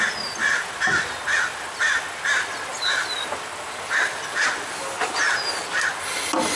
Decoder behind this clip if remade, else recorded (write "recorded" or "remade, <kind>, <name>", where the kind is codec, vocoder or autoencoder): recorded